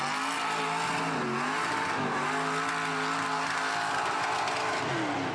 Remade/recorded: recorded